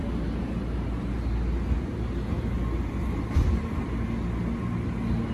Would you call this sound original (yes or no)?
yes